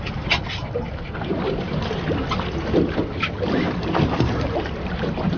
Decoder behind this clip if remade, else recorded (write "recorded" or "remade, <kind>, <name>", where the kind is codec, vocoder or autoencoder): recorded